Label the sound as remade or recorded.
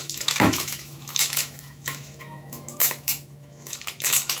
remade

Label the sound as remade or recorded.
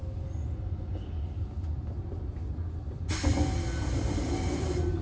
recorded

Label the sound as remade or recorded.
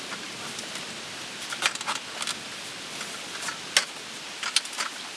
recorded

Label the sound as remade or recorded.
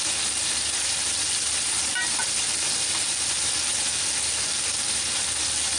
recorded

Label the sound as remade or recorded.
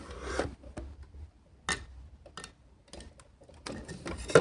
recorded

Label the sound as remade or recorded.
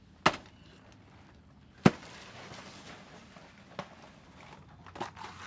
recorded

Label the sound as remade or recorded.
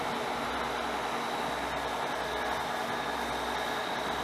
recorded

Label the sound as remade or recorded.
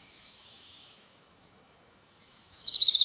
remade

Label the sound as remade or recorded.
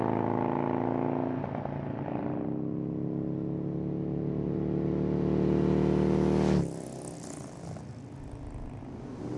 recorded